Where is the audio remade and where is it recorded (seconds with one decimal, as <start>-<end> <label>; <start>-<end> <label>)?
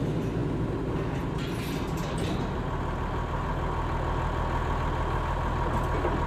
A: 0.0-6.3 recorded